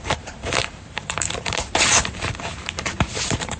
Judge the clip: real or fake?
fake